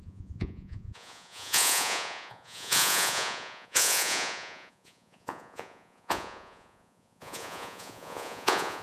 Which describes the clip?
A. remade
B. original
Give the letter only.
A